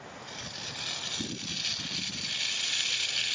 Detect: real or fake real